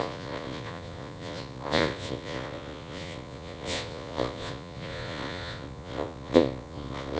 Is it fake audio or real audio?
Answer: fake